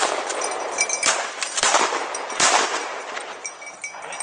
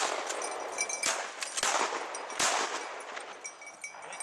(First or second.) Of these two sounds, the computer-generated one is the first